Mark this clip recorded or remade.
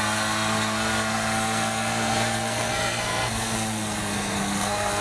remade